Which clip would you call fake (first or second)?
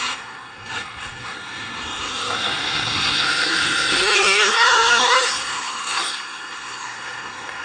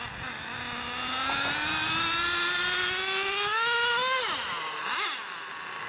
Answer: first